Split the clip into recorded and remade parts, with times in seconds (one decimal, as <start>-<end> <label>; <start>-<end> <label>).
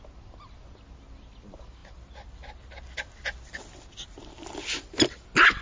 0.0-5.6 recorded